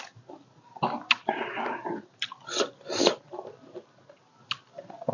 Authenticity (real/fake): real